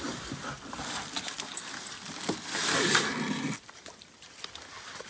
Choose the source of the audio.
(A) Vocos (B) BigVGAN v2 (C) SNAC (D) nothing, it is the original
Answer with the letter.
B